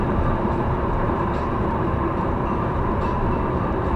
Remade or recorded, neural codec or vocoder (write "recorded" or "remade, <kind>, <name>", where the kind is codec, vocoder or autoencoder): remade, vocoder, BigVGAN v2